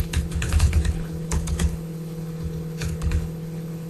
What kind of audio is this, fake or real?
fake